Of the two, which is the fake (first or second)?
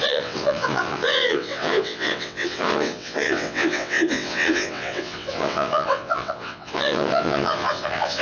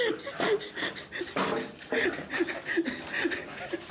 first